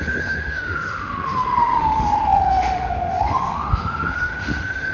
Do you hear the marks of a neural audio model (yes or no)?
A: yes